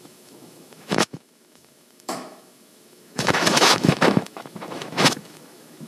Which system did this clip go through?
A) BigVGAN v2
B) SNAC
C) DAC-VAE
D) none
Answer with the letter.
C